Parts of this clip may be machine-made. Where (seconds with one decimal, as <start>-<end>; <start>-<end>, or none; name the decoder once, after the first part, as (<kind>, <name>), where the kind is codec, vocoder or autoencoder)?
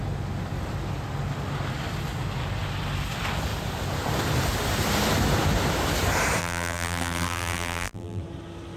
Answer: 6.4-8.2 (vocoder, BigVGAN v2)